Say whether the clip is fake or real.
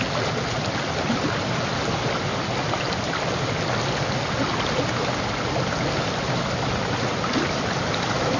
real